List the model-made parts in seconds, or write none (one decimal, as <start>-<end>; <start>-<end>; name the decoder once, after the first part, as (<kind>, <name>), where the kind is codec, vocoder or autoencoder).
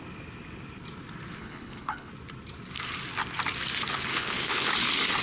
1.4-2.1 (codec, HILCodec); 4.1-4.7